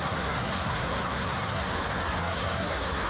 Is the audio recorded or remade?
remade